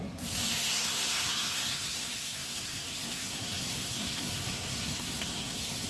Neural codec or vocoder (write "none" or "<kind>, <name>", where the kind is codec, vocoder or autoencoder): codec, SNAC